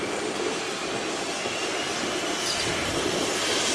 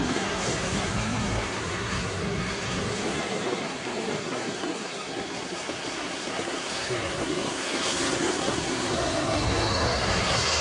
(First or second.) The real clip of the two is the first